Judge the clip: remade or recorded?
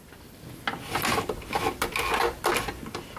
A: recorded